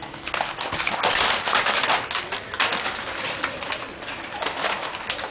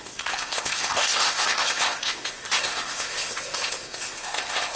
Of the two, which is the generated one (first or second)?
second